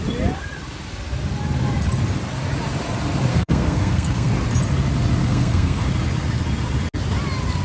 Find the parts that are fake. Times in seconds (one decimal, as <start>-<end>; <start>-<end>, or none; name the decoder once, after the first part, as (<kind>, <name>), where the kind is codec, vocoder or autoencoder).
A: 3.3-4.3 (codec, SNAC); 5.2-5.9